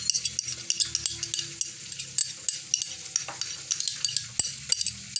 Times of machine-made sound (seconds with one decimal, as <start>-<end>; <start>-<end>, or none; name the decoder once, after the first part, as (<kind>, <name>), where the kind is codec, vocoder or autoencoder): none